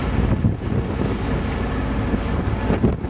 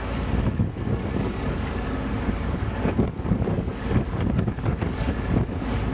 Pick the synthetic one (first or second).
second